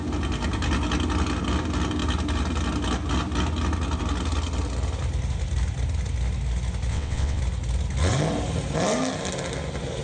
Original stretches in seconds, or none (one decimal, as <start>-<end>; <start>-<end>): 0.0-6.9; 7.4-10.0